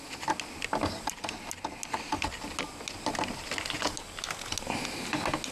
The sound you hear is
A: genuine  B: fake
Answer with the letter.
A